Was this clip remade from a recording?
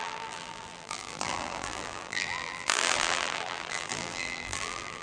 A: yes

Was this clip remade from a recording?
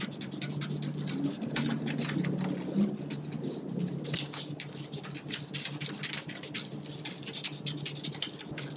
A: no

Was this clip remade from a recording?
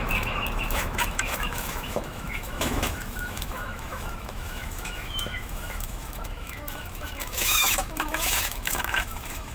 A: yes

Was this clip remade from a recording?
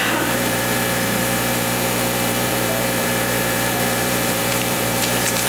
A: yes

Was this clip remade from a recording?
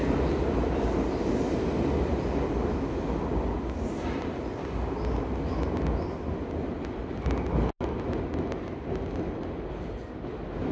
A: no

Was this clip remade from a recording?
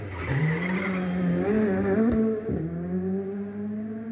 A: no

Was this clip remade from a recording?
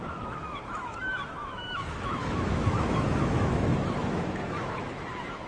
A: yes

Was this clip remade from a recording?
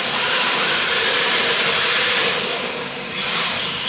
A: yes